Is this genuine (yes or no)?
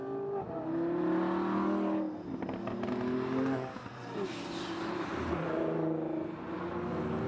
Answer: yes